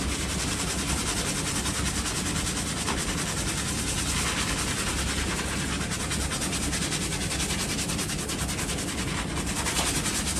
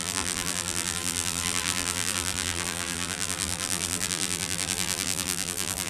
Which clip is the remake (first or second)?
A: second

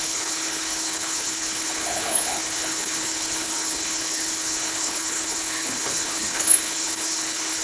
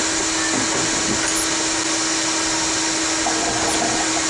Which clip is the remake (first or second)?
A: first